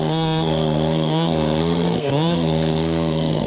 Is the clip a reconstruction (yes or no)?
yes